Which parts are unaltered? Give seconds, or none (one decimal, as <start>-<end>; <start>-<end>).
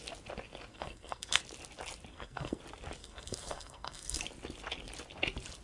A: 0.0-0.7; 1.4-2.1; 2.6-3.0; 4.2-5.6